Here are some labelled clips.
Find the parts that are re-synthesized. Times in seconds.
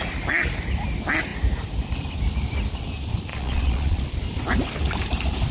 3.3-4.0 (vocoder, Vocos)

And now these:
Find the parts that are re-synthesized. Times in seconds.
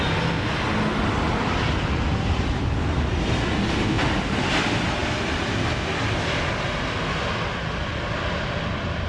none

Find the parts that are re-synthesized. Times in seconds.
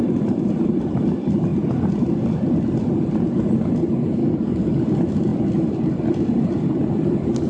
4.2-4.8 (codec, DAC)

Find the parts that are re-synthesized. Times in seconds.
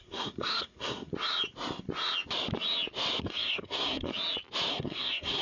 0.0-1.1 (codec, SNAC); 3.2-4.1; 4.7-5.4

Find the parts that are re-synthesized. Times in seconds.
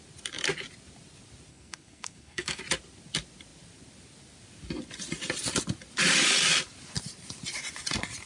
1.5-2.6 (codec, SNAC)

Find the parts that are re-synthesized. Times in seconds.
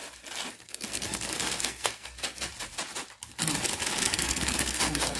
0.5-2.5 (codec, SNAC); 4.0-5.2